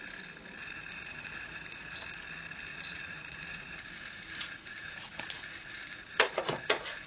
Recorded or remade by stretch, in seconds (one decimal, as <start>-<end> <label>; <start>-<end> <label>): 0.0-0.8 recorded; 0.8-2.0 remade; 2.0-2.7 recorded; 2.7-7.1 remade